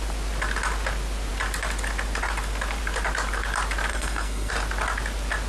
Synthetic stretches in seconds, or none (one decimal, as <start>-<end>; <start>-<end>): 3.9-4.5